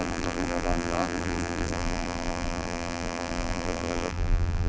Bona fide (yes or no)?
no